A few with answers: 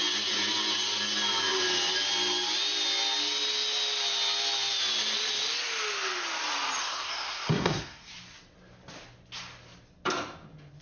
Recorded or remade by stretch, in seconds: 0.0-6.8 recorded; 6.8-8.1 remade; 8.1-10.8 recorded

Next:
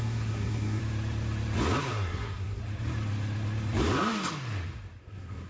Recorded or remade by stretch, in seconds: 0.0-0.8 remade; 0.8-1.8 recorded; 1.8-2.6 remade; 2.6-5.0 recorded; 5.0-5.5 remade

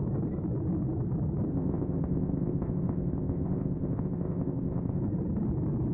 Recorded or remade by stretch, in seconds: 0.0-1.5 recorded; 1.5-5.0 remade; 5.0-5.9 recorded

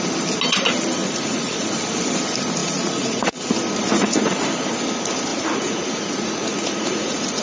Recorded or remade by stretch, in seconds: 0.0-1.0 recorded; 1.0-1.7 remade; 1.7-2.6 recorded; 2.6-3.4 remade; 3.4-3.9 recorded; 3.9-4.5 remade; 4.5-5.3 recorded; 5.3-7.4 remade

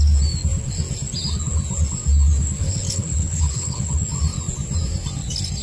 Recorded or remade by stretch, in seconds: 0.0-2.6 recorded; 2.6-3.9 remade; 3.9-5.6 recorded

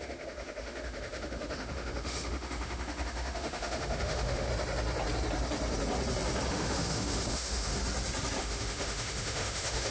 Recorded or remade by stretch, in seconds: 0.0-4.5 remade; 4.5-6.5 recorded; 6.5-7.8 remade; 7.8-8.4 recorded; 8.4-9.9 remade

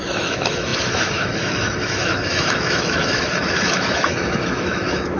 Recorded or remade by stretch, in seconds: 0.0-5.2 remade